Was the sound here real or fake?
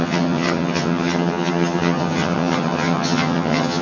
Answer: fake